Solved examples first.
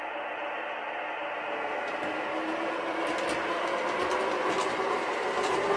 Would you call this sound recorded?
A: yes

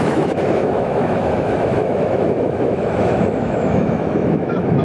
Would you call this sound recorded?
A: no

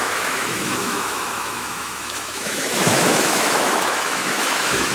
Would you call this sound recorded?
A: no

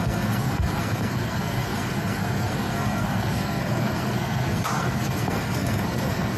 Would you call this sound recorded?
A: no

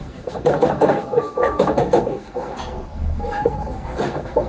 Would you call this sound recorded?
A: no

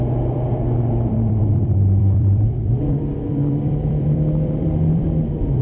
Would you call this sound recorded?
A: no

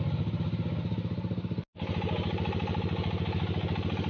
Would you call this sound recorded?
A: yes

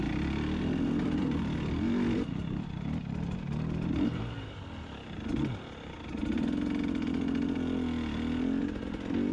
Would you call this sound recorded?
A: yes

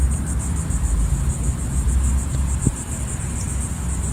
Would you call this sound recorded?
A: yes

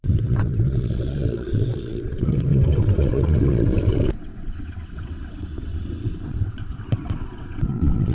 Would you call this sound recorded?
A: no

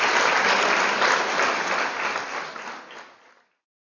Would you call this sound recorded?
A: yes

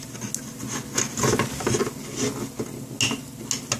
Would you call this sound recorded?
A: yes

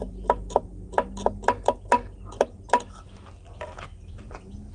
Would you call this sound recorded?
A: yes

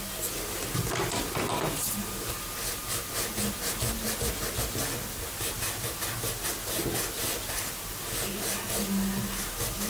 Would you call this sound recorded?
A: yes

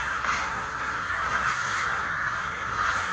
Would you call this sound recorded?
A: no